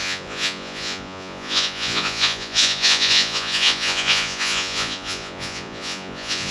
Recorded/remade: remade